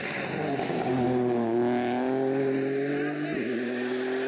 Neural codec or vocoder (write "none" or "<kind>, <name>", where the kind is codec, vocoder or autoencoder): none